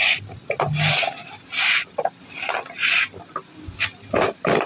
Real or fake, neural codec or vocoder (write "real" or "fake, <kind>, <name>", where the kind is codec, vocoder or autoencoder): real